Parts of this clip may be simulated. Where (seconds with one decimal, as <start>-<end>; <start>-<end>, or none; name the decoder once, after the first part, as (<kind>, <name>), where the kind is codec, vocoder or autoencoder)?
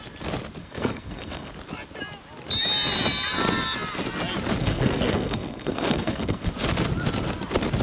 0.6-1.5 (codec, SNAC); 4.6-6.5